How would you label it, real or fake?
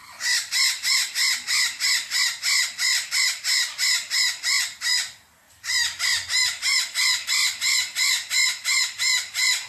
real